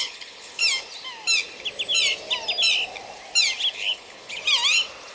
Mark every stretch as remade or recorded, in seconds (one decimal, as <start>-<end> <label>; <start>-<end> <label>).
0.0-0.6 remade; 0.6-3.7 recorded; 3.7-4.4 remade; 4.4-5.1 recorded